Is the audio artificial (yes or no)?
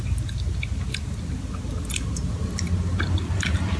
no